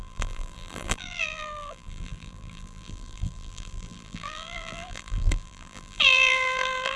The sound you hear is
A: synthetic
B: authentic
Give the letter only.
A